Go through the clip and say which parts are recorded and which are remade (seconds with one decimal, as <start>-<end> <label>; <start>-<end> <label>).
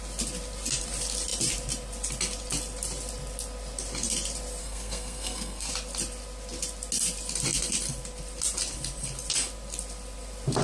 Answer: 0.0-4.6 recorded; 4.6-5.7 remade; 5.7-10.6 recorded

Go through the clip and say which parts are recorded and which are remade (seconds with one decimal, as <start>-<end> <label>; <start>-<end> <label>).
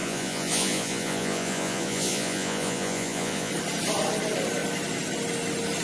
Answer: 0.0-3.5 remade; 3.5-5.8 recorded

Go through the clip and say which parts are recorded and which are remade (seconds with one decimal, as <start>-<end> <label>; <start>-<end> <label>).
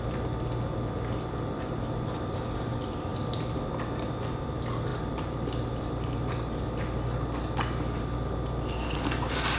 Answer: 0.0-9.6 recorded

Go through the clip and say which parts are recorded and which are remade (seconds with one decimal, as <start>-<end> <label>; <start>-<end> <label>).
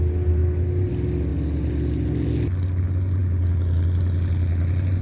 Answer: 0.0-5.0 recorded